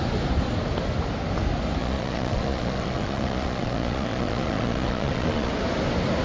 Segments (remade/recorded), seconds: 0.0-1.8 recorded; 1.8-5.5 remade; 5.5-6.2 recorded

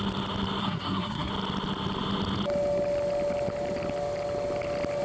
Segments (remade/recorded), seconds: 0.0-0.6 recorded; 0.6-1.3 remade; 1.3-5.0 recorded

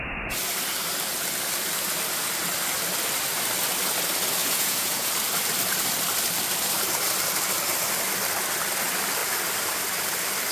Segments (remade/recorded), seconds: 0.0-4.4 recorded; 4.4-5.1 remade; 5.1-10.5 recorded

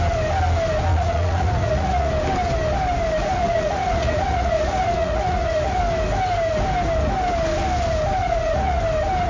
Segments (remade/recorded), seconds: 0.0-0.9 recorded; 0.9-2.1 remade; 2.1-3.2 recorded; 3.2-5.8 remade; 5.8-8.2 recorded; 8.2-8.8 remade; 8.8-9.3 recorded

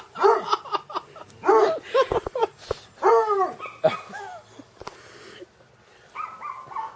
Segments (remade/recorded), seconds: 0.0-7.0 recorded

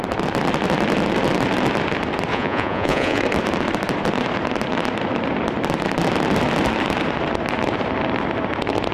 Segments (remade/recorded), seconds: 0.0-2.3 recorded; 2.3-3.2 remade; 3.2-8.9 recorded